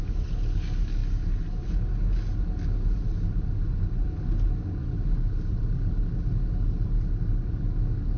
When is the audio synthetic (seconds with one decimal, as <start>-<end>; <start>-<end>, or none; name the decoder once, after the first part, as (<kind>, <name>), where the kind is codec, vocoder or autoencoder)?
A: none